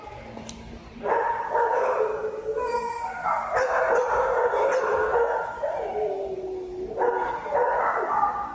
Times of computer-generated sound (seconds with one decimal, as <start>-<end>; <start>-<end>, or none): none